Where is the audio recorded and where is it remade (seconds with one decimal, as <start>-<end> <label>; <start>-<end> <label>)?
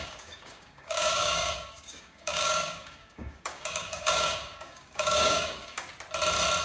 0.0-5.9 remade; 5.9-6.6 recorded